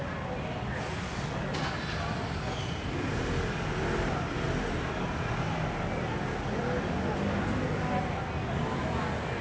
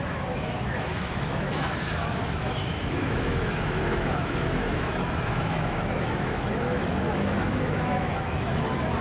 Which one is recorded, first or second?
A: first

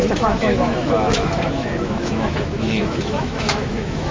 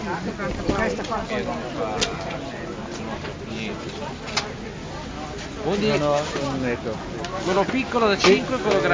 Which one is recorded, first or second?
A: second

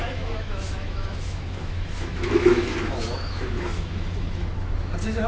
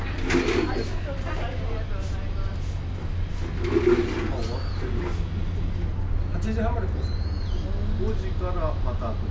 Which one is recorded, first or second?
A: second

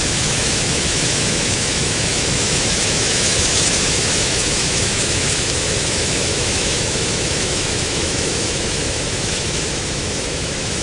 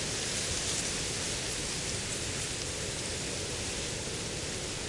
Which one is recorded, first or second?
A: second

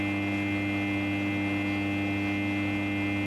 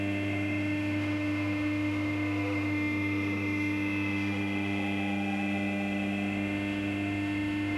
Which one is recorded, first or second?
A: first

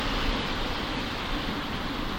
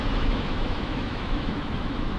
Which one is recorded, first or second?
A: first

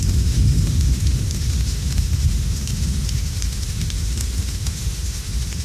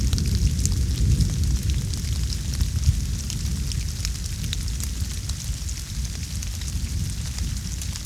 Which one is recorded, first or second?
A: second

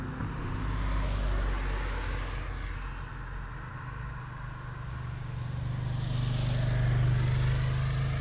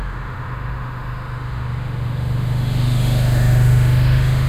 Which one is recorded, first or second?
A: first